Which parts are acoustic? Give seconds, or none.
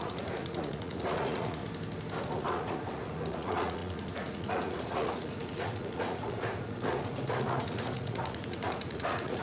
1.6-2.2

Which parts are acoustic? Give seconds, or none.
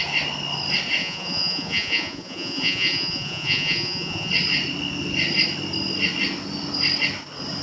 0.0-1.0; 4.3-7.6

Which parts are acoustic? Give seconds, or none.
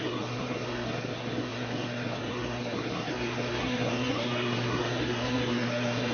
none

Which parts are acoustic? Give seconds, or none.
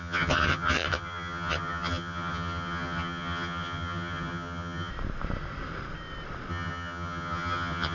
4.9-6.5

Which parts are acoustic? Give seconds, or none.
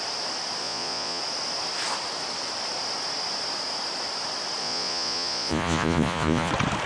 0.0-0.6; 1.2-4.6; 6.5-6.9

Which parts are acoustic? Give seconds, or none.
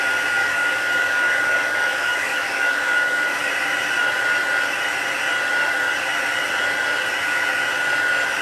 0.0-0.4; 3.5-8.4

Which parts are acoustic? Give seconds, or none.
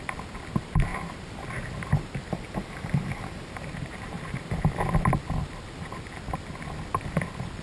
0.0-0.9; 4.6-7.6